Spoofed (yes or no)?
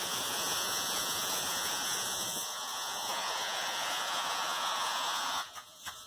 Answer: yes